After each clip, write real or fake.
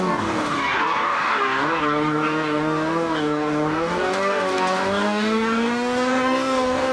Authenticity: fake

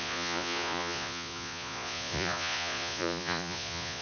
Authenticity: fake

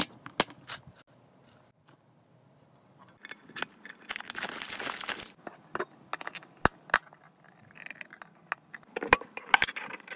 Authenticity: real